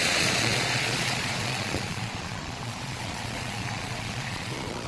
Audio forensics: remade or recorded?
remade